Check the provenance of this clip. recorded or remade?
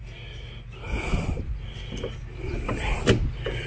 recorded